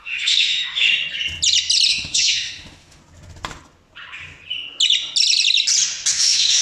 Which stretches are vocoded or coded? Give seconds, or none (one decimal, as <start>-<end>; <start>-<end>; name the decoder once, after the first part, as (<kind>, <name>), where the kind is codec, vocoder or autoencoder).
0.0-0.9 (autoencoder, DAC-VAE); 1.9-3.0; 6.1-6.6